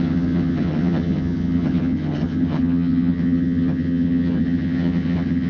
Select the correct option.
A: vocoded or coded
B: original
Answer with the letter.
A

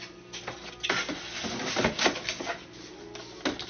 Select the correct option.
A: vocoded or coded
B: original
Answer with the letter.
B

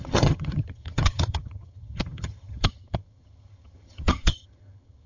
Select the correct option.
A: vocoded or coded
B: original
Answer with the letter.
A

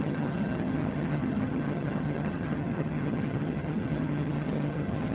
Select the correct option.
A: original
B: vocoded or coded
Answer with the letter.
B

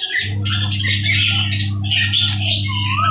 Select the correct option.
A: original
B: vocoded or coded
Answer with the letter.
A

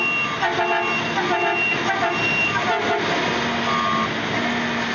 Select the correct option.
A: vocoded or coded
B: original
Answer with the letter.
B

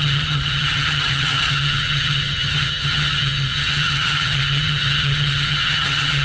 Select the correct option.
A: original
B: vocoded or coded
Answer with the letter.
B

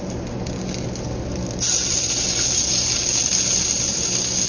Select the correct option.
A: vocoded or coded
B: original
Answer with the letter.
B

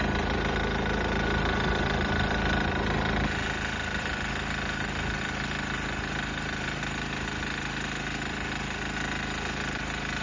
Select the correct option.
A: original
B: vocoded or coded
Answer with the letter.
A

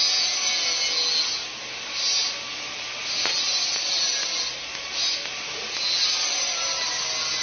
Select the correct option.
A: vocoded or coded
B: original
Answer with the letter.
B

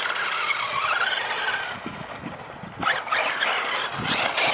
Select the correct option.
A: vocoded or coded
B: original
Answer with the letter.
B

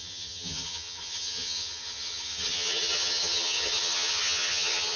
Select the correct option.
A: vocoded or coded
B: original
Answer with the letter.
A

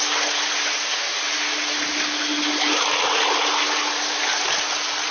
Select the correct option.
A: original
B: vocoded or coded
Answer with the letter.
A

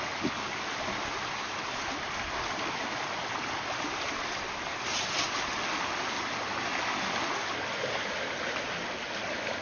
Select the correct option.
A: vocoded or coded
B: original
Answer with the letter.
B